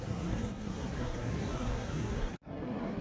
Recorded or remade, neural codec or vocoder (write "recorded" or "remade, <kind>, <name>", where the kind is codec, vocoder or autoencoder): remade, codec, SNAC